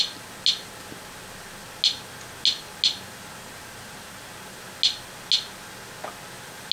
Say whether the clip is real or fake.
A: real